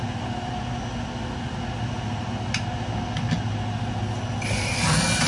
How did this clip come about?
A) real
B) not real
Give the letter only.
A